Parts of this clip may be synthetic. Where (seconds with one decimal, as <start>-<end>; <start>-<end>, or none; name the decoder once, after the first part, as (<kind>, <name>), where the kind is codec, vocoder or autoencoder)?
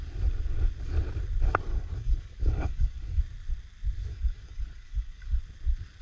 1.7-3.2 (codec, DAC); 4.1-5.4